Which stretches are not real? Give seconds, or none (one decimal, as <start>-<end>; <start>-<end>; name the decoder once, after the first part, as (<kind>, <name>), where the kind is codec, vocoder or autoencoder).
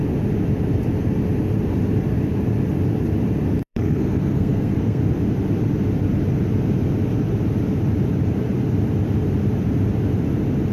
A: 3.6-5.0 (codec, SNAC)